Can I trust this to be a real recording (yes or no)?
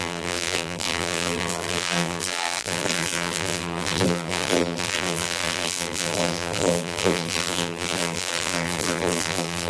no